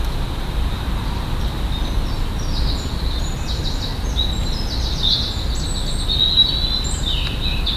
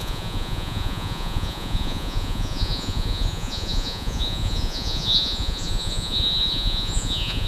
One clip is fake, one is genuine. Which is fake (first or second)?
second